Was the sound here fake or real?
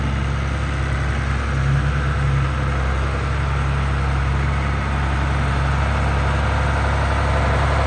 real